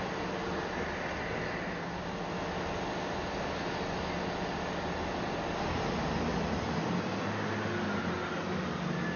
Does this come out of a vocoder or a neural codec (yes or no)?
no